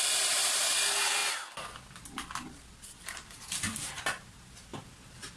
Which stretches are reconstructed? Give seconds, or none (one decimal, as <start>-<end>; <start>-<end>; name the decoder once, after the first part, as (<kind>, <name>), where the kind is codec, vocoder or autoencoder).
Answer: 0.0-1.2 (vocoder, BigVGAN v2); 3.0-4.7